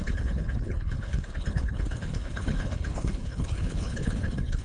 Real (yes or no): no